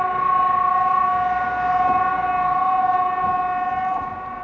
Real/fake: real